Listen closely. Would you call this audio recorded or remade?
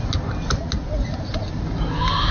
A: recorded